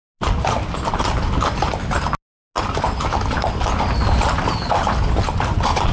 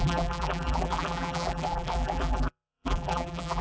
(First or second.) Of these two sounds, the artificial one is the second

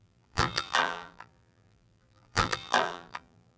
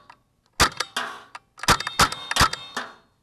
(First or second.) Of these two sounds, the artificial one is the first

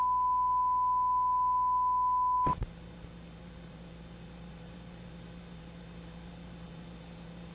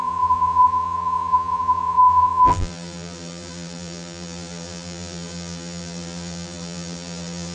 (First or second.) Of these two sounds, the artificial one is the second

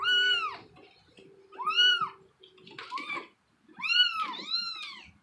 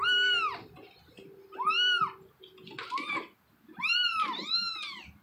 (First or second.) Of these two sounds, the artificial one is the first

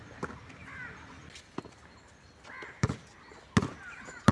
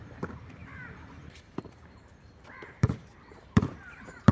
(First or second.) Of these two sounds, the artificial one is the second